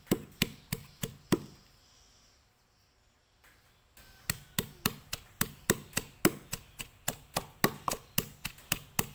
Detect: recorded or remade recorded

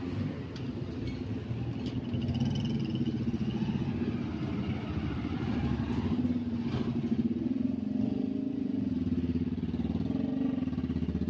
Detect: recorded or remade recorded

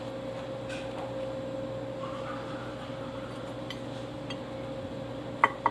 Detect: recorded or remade recorded